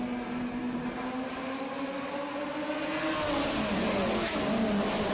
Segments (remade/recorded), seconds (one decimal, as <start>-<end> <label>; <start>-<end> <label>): 0.0-5.1 recorded